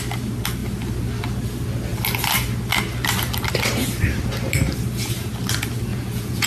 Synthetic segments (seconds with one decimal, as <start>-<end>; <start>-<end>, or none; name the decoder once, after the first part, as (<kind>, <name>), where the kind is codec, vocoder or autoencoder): 5.9-6.5 (vocoder, Vocos)